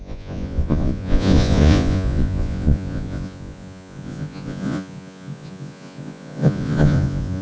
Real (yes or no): no